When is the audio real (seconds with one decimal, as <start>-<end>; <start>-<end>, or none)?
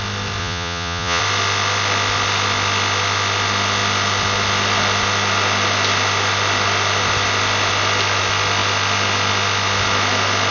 0.0-0.4; 1.2-10.5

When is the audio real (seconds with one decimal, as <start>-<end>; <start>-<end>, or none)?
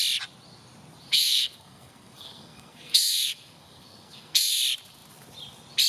0.0-1.1; 4.6-5.9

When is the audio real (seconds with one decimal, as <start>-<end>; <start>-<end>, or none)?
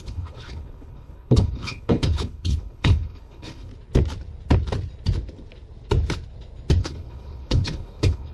3.7-6.8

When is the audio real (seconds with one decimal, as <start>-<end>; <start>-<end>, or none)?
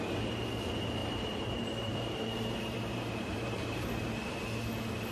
0.0-1.0; 3.9-5.1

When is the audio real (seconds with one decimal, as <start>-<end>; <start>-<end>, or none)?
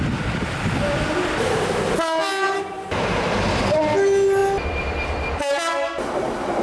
0.0-6.6